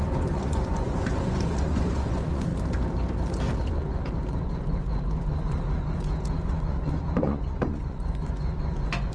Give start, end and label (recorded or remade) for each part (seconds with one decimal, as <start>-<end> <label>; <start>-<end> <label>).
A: 0.0-2.5 remade; 2.5-3.7 recorded; 3.7-9.1 remade